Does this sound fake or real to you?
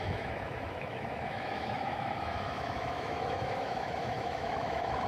fake